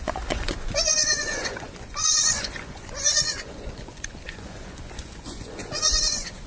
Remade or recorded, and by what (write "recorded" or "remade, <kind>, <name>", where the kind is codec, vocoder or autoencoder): remade, vocoder, Vocos